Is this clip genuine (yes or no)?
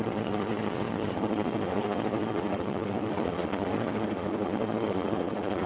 no